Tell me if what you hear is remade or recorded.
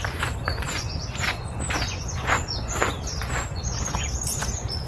remade